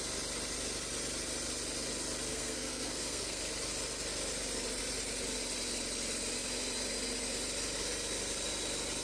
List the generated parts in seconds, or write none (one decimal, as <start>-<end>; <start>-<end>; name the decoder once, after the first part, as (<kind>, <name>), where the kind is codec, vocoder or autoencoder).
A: 2.3-3.4 (codec, SNAC)